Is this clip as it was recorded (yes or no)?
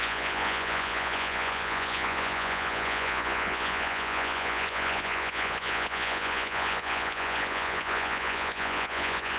no